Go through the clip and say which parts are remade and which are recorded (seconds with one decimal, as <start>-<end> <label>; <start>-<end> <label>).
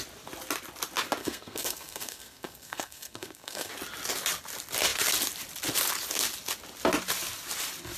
0.0-1.2 recorded; 1.2-3.7 remade; 3.7-8.0 recorded